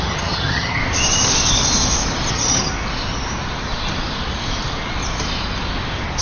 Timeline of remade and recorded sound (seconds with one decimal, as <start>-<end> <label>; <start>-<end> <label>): 0.0-0.8 remade; 0.8-2.3 recorded; 2.3-2.7 remade; 2.7-6.2 recorded

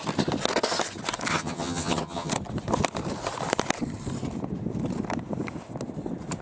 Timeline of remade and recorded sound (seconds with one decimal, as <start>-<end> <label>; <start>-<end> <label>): 0.0-1.3 recorded; 1.3-2.3 remade; 2.3-6.4 recorded

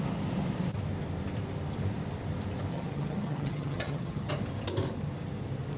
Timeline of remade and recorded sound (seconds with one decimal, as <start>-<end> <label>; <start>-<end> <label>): 0.0-2.7 recorded; 2.7-4.3 remade; 4.3-5.8 recorded

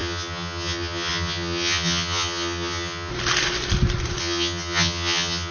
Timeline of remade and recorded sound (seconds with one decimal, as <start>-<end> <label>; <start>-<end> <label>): 0.0-3.1 remade; 3.1-4.2 recorded; 4.2-5.5 remade